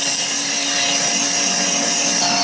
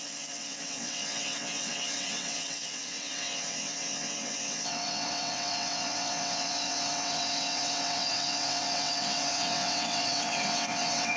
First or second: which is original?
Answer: first